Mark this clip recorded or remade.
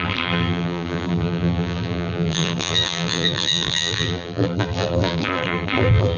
remade